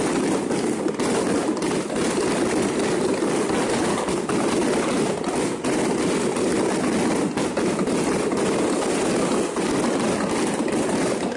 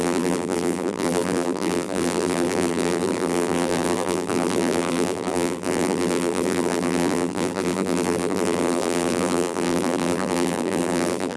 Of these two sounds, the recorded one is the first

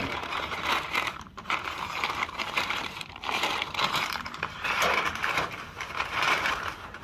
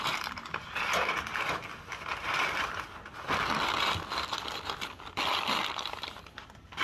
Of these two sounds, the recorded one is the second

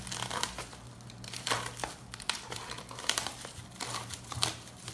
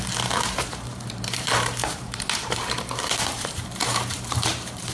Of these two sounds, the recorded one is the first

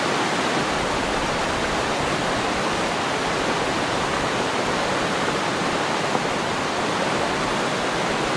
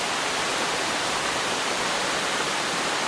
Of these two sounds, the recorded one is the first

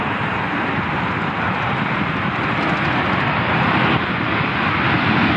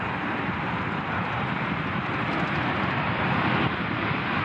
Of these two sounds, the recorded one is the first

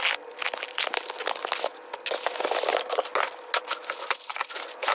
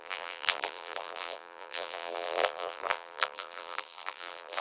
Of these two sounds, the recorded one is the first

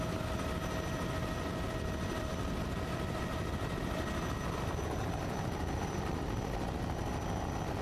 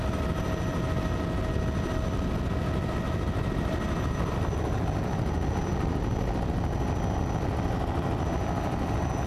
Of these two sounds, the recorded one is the second